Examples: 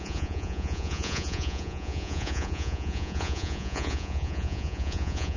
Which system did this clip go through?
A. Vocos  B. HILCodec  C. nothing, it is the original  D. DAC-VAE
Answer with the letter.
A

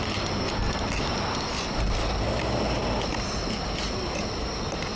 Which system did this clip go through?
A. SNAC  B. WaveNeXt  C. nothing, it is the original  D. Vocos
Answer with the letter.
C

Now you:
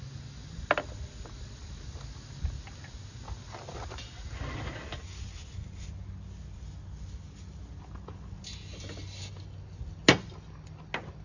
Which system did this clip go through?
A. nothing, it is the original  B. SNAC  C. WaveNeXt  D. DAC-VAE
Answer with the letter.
A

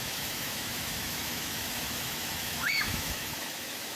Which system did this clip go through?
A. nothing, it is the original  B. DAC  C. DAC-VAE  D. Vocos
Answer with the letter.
C